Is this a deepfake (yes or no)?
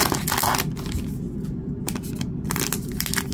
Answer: no